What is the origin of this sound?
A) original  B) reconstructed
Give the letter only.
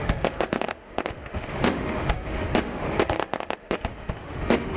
B